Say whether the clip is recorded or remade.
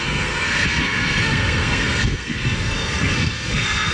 remade